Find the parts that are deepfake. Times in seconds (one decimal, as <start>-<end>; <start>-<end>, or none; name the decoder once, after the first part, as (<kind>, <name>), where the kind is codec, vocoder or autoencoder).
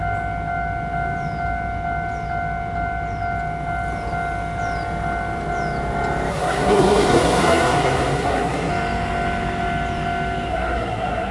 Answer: 6.3-8.7 (codec, SNAC); 10.5-11.3